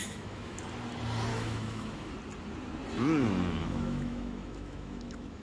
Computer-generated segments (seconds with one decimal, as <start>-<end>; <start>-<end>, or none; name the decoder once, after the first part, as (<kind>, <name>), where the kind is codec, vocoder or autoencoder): 0.0-0.6 (autoencoder, DAC-VAE); 1.3-2.1; 3.6-5.4